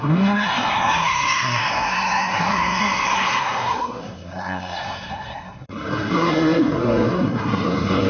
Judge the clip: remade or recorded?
remade